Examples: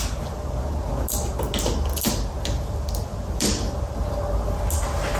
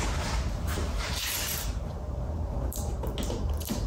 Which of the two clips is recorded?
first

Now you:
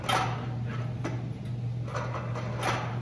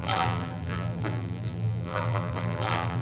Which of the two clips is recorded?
first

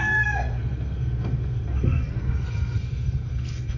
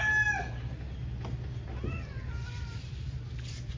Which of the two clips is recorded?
second